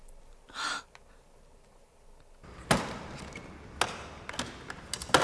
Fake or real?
real